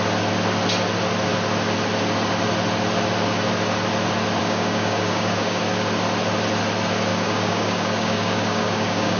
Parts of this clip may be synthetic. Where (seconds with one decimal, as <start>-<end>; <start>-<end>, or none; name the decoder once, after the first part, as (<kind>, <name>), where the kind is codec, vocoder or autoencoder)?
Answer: 4.4-5.6 (codec, DAC); 7.1-9.2